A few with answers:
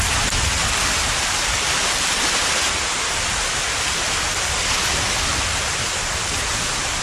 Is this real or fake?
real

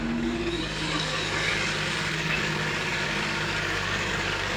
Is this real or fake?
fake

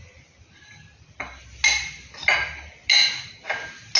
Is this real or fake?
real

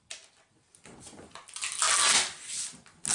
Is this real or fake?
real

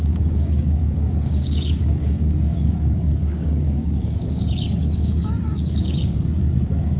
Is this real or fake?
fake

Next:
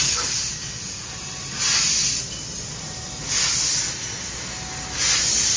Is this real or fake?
real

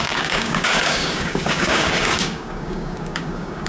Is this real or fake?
fake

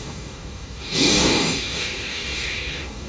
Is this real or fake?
fake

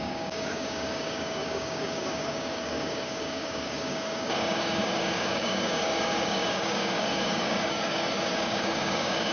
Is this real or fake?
fake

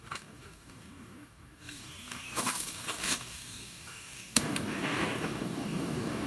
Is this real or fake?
fake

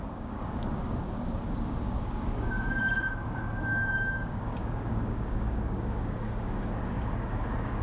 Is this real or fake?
fake